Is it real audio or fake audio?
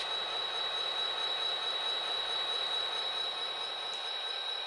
real